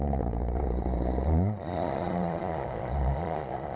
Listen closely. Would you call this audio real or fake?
fake